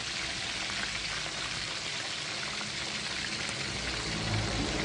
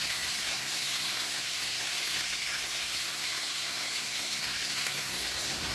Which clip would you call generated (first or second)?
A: second